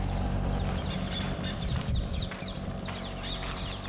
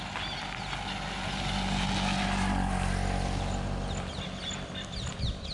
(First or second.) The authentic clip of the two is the second